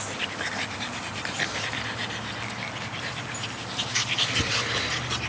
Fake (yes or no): no